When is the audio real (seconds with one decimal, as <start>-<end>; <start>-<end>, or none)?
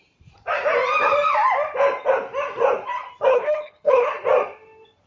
0.0-3.3; 4.1-5.1